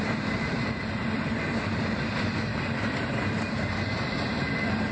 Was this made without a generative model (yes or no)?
no